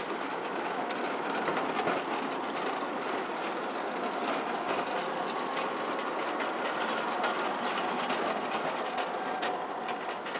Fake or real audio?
real